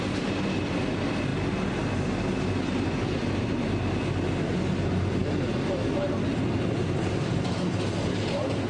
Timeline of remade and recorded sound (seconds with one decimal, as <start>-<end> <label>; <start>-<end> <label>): 0.0-8.7 recorded